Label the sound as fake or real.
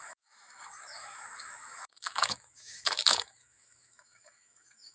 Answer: fake